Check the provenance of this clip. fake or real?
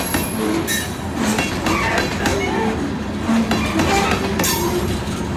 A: real